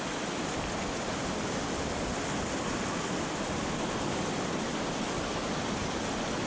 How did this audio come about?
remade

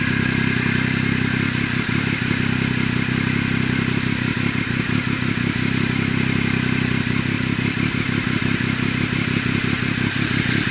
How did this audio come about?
recorded